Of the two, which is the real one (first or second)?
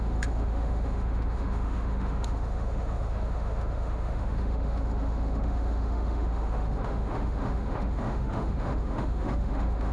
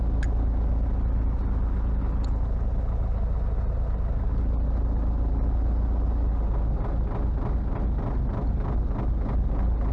second